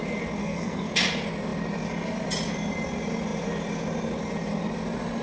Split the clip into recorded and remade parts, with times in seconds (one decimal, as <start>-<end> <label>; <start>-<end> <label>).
0.0-0.4 recorded; 0.4-0.9 remade; 0.9-5.2 recorded